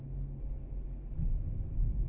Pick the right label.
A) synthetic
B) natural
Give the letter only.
B